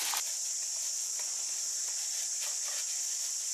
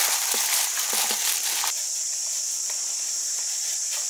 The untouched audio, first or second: first